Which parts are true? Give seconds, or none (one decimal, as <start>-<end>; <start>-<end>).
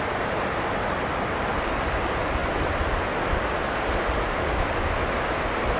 0.0-5.8